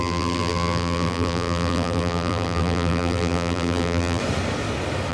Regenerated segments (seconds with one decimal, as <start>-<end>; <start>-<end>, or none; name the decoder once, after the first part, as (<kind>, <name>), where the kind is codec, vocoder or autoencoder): 0.0-4.2 (vocoder, BigVGAN v2)